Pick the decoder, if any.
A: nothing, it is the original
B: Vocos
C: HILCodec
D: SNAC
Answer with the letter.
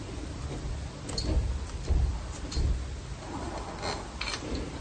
A